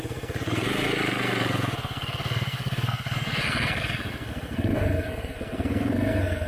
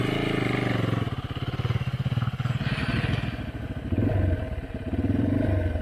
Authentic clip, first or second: second